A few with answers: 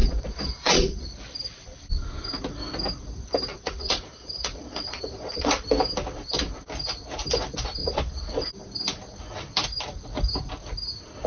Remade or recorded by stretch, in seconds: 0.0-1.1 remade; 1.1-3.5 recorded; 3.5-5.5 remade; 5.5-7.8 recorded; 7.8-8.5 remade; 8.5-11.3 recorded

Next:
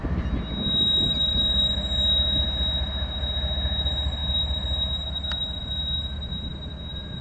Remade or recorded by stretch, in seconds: 0.0-7.2 recorded